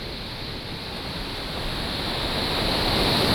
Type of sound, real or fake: real